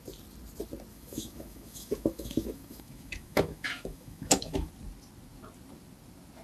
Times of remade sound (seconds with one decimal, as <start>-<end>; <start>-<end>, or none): 0.9-4.7